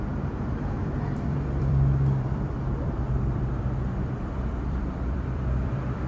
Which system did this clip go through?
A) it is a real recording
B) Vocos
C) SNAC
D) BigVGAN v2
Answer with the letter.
D